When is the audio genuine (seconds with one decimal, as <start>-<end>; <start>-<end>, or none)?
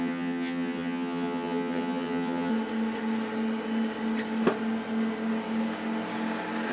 2.5-6.7